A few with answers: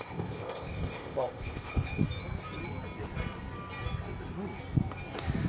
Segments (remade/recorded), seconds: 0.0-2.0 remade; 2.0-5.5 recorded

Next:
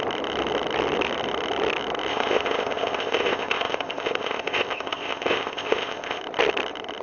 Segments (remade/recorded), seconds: 0.0-2.1 recorded; 2.1-6.2 remade; 6.2-7.0 recorded

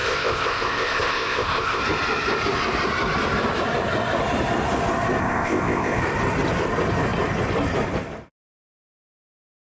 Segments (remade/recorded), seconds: 0.0-1.8 remade; 1.8-5.2 recorded; 5.2-6.0 remade; 6.0-9.7 recorded